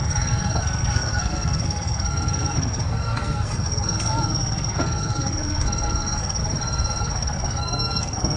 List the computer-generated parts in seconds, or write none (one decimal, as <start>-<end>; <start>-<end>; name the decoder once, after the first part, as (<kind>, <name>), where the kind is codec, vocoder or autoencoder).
0.0-6.4 (codec, SNAC); 7.0-8.4